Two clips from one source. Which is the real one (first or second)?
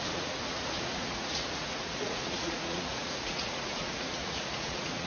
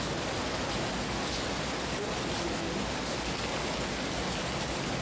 second